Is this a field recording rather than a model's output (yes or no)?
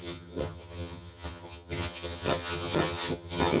no